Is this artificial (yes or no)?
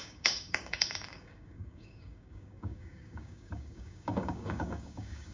yes